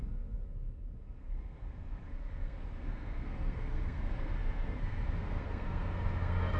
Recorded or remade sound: remade